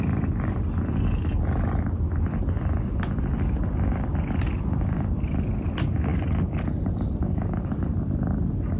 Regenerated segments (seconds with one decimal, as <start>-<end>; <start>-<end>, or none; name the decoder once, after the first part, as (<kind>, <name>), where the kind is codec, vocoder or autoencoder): none